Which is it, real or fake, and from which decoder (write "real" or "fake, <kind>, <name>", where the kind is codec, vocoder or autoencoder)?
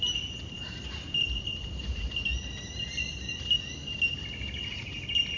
fake, vocoder, BigVGAN v2